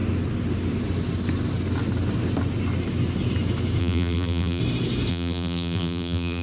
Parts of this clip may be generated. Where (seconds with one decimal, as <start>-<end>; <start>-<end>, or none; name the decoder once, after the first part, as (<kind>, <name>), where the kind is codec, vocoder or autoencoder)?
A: 3.8-4.6 (vocoder, BigVGAN v2); 5.1-6.4